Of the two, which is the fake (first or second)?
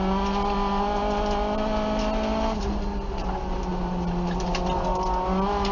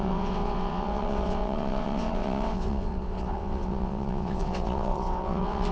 second